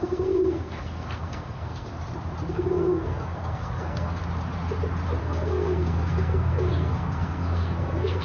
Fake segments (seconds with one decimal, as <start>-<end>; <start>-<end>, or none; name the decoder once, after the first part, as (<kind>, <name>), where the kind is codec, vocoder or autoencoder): 0.0-1.9 (codec, SNAC); 2.5-4.2; 5.2-8.2